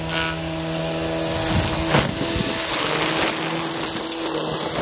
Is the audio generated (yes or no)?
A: no